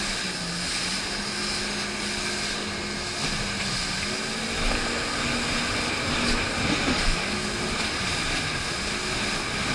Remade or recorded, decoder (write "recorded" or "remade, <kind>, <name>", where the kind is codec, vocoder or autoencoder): recorded